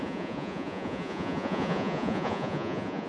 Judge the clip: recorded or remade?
remade